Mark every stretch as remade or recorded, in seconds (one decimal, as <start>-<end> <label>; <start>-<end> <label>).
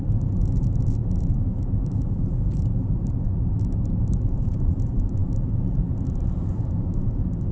0.0-7.5 remade